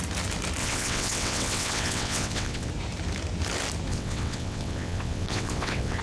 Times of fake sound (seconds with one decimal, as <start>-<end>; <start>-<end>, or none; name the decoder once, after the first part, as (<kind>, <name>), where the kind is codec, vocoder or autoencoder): 0.6-2.7 (vocoder, WaveNeXt); 3.9-6.0